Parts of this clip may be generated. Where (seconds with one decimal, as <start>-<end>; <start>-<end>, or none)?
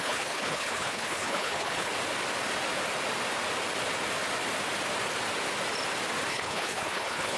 0.0-1.9; 6.3-7.4